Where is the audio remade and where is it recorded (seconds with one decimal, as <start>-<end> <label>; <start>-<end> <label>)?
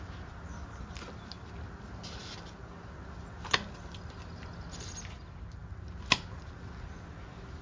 0.0-7.6 recorded